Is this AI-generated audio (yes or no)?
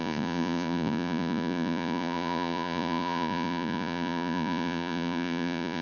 yes